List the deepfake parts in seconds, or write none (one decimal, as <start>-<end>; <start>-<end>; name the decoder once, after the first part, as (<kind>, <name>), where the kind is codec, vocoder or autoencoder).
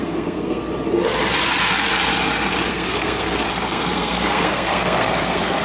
0.0-0.6 (codec, SNAC); 2.7-5.6